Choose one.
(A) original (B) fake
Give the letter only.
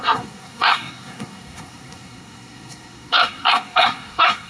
B